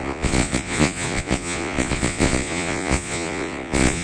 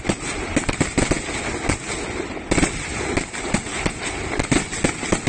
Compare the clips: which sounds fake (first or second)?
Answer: first